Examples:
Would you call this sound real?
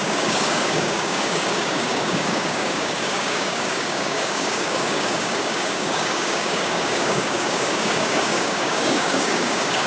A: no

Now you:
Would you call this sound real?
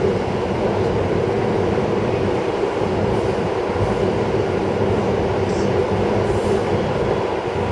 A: yes